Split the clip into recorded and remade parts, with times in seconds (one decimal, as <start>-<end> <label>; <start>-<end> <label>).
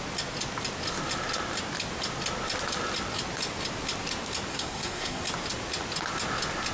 0.0-4.5 recorded; 4.5-5.2 remade; 5.2-6.7 recorded